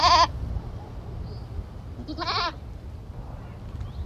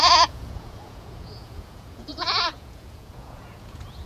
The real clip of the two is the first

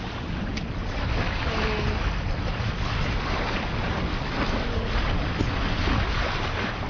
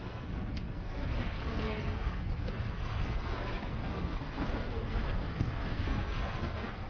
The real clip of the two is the first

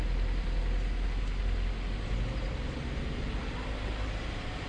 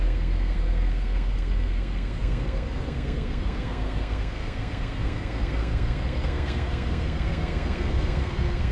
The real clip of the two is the first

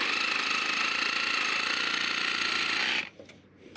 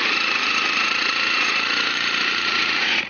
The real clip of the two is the first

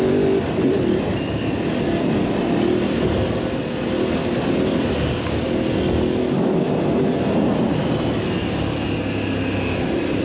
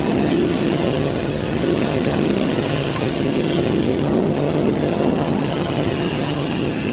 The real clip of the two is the first